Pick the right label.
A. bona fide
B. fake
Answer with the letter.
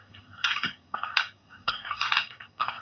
B